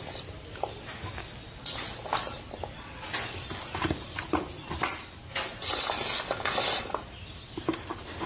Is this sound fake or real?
real